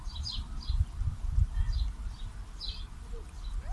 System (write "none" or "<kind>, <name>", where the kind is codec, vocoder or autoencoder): none